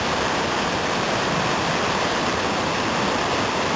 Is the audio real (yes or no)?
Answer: yes